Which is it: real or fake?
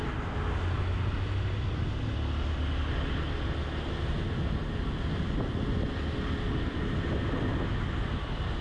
real